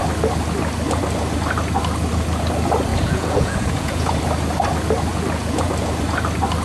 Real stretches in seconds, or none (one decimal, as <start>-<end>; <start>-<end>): 0.0-2.9; 4.2-5.1; 5.7-6.6